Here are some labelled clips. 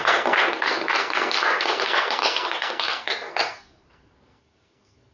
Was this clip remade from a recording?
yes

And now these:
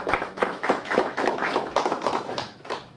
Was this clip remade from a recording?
yes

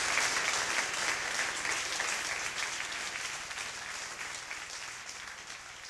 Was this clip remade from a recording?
no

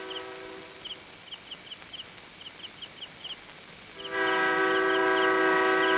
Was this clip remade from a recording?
no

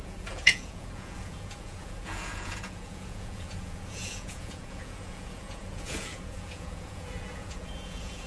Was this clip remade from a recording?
yes